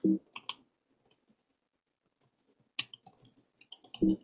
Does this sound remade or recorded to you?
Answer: recorded